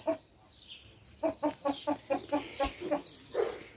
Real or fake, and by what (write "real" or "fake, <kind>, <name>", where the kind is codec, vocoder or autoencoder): real